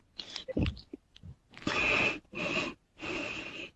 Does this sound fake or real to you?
real